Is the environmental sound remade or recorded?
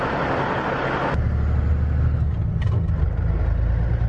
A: recorded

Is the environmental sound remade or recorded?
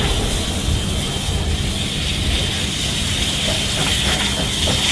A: recorded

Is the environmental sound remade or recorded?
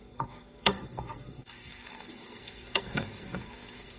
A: remade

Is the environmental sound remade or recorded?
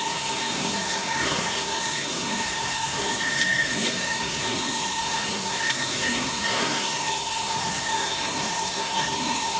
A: remade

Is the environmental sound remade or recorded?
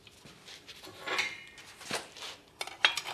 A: recorded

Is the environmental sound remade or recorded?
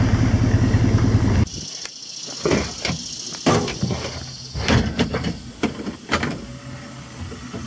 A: recorded